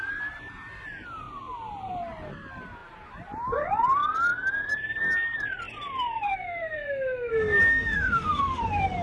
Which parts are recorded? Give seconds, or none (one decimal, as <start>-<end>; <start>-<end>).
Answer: 0.0-7.7; 8.6-9.0

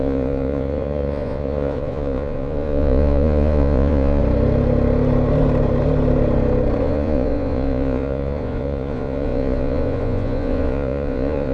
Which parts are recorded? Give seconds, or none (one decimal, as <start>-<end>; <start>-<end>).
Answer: 4.2-6.8

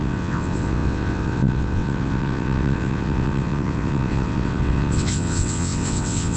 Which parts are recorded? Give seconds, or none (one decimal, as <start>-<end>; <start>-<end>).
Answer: none

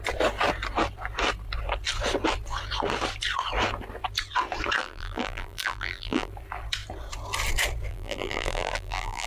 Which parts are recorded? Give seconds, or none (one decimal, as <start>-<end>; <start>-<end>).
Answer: 0.0-4.8; 6.3-7.9